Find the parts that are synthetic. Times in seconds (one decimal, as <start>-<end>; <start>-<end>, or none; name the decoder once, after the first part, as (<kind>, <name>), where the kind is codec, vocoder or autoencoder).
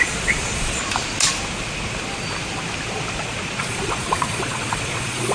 0.0-0.8 (vocoder, Vocos); 3.6-5.3